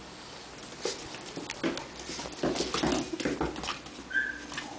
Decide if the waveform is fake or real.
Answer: real